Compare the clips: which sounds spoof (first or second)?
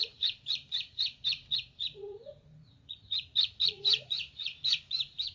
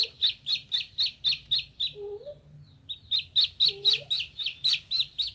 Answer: first